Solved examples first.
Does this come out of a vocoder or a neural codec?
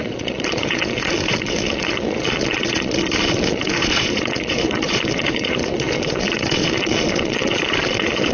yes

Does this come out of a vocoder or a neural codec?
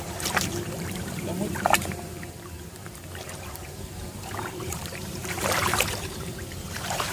yes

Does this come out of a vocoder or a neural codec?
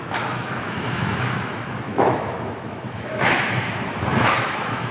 yes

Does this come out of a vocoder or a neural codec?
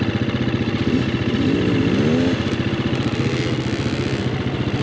no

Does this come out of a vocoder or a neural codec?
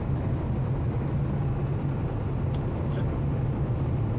no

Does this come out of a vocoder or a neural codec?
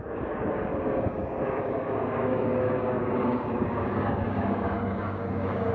yes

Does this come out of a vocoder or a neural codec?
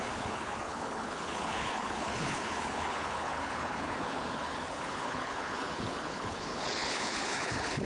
yes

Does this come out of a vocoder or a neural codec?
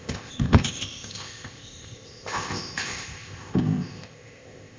yes